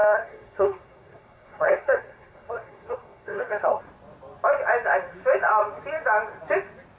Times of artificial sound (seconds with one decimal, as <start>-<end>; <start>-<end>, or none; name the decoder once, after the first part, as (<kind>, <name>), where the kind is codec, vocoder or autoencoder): 0.0-3.8 (codec, SNAC)